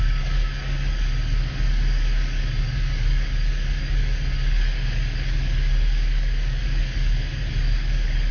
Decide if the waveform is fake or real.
fake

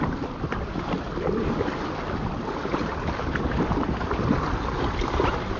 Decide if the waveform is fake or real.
real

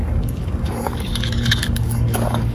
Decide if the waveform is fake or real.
fake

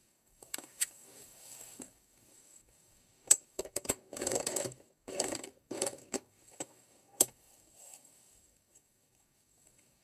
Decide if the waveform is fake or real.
fake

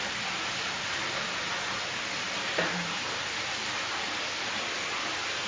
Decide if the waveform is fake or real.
real